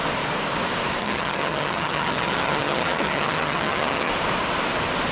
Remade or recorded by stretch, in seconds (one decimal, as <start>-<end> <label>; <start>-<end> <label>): 0.0-1.0 recorded; 1.0-4.1 remade; 4.1-5.1 recorded